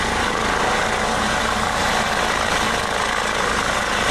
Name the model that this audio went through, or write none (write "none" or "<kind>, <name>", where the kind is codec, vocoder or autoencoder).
none